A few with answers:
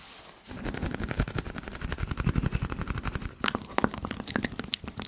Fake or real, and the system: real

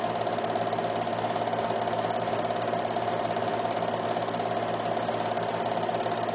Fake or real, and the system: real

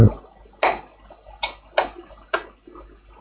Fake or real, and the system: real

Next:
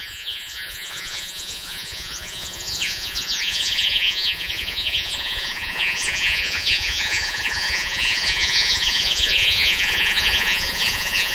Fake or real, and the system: fake, vocoder, Vocos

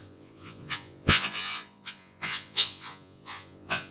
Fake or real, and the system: fake, vocoder, Vocos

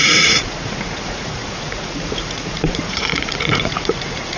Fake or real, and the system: fake, vocoder, Vocos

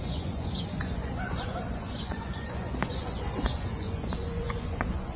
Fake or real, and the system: fake, vocoder, Vocos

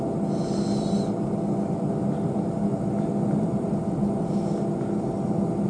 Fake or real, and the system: real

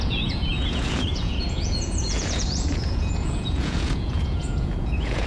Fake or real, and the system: fake, vocoder, Vocos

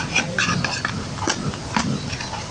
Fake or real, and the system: real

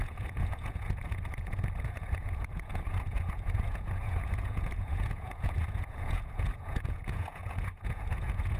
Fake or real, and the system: fake, vocoder, Vocos